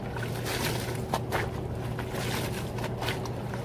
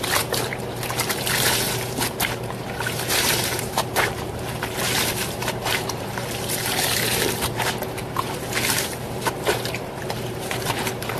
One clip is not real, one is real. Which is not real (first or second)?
second